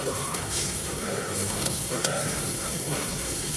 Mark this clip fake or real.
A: fake